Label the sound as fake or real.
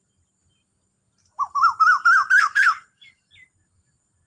real